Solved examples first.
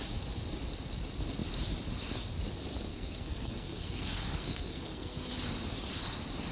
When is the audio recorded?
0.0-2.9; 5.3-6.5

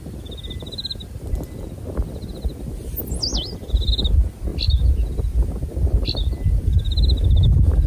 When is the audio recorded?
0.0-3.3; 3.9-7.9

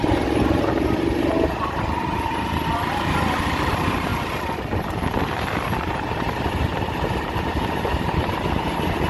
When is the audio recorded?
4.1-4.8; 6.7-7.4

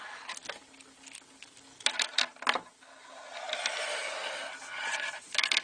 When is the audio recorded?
0.0-5.6